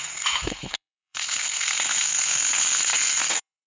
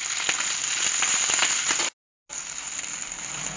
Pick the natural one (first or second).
second